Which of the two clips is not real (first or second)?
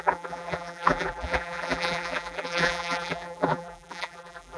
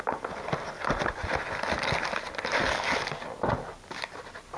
first